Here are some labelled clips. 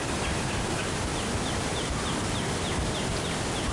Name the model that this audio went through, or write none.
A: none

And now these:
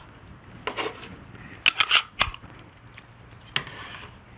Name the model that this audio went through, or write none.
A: none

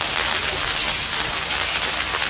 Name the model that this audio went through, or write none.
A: none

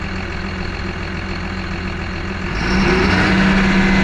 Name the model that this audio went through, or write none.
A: none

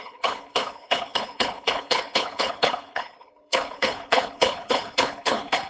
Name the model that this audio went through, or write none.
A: codec, HILCodec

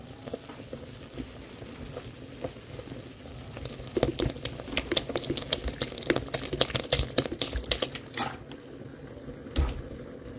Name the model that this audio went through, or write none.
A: none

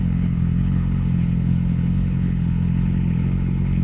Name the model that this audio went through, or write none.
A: codec, HILCodec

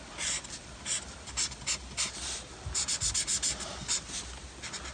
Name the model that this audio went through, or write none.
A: none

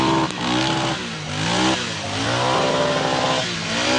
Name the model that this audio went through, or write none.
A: none